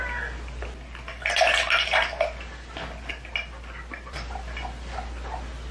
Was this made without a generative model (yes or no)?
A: yes